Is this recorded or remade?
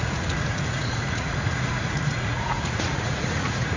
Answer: remade